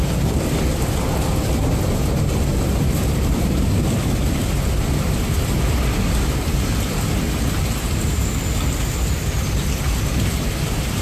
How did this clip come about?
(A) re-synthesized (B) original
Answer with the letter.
B